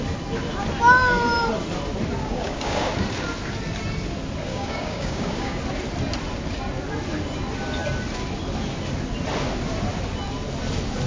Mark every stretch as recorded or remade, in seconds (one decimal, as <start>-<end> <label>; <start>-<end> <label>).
0.0-2.2 recorded; 2.2-2.9 remade; 2.9-4.5 recorded; 4.5-5.6 remade; 5.6-11.1 recorded